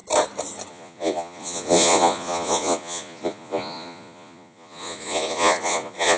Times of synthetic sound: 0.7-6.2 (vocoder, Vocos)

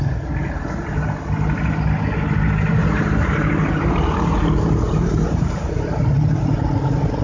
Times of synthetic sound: 2.7-6.5 (vocoder, BigVGAN v2)

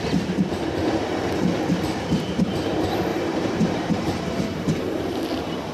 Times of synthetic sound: 3.1-4.4 (vocoder, BigVGAN v2)

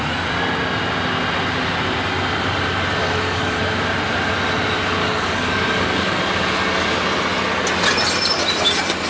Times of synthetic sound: 3.0-3.6 (codec, DAC); 5.0-6.2

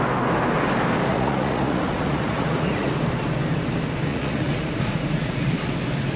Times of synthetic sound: 1.1-2.9 (vocoder, Vocos); 4.1-5.6